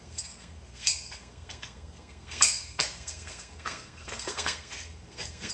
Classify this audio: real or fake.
fake